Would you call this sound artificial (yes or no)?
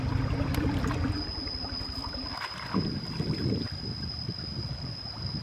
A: no